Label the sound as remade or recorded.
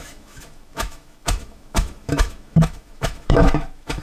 remade